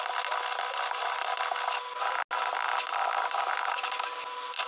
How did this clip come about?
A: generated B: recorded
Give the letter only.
B